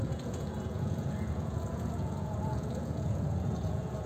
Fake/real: fake